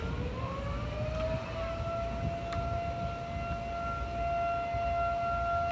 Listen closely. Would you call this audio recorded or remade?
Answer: recorded